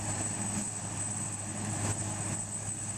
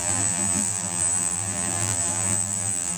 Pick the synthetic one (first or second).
second